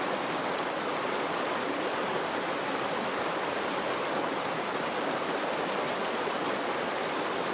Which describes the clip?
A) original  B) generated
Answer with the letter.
A